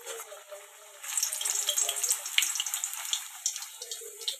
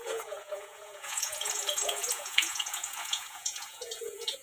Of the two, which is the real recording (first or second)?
first